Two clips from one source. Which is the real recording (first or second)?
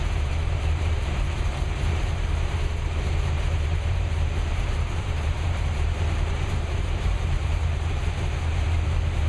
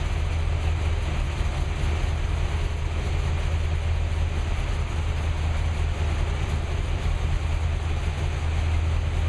second